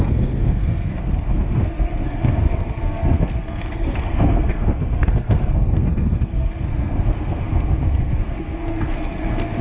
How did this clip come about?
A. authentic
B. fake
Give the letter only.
B